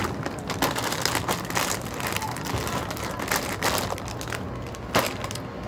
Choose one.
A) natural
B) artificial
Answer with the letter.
A